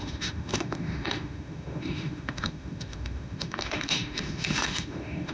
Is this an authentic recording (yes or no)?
no